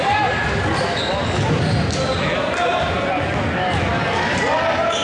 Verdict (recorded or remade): recorded